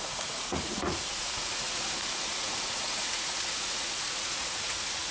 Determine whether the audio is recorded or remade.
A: remade